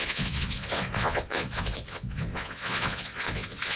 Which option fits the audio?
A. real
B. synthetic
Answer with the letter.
B